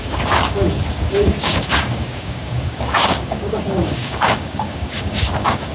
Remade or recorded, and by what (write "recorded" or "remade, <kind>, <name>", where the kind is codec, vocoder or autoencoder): remade, codec, DAC